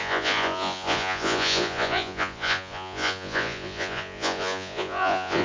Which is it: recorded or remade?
remade